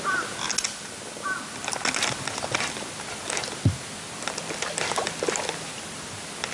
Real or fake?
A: real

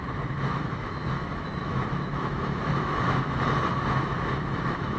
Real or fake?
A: fake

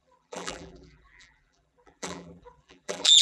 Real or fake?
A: fake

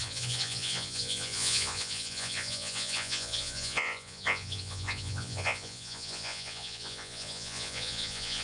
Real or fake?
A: fake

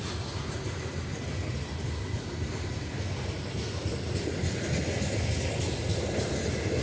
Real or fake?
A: real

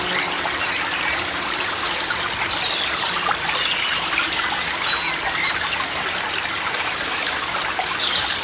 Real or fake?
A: real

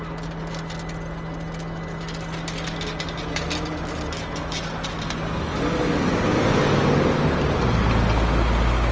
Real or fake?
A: real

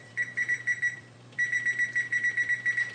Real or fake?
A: fake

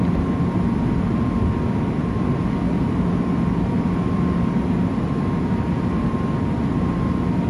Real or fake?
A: real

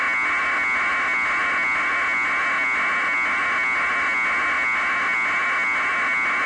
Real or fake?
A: real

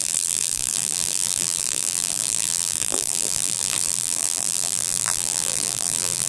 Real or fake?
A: fake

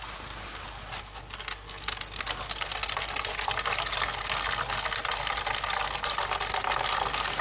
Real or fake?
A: real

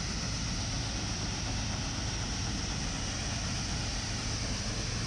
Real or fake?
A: real